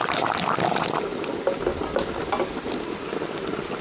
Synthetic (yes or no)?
no